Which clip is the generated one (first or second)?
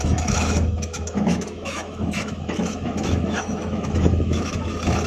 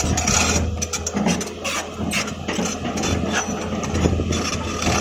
first